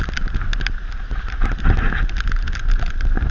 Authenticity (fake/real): real